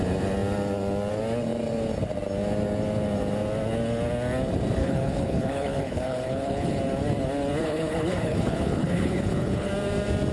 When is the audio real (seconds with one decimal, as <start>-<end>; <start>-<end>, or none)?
0.0-4.8; 6.8-7.6; 9.7-10.3